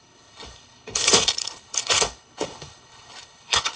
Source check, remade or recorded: remade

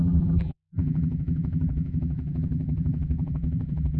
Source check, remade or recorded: remade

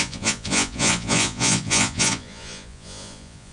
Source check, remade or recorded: remade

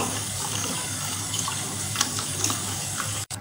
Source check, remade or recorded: remade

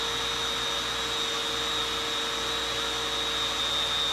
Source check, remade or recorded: recorded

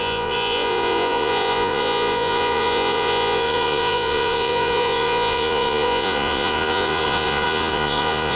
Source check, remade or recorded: remade